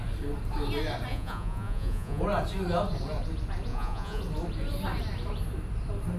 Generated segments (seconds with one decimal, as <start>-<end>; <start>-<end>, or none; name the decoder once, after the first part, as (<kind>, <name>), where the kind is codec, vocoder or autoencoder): 1.1-2.2 (vocoder, Vocos); 3.7-4.2